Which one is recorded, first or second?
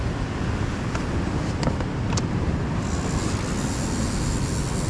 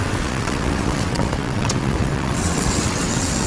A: first